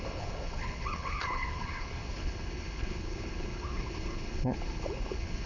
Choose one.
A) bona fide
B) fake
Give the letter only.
B